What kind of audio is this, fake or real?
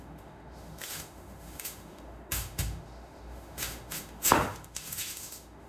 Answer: fake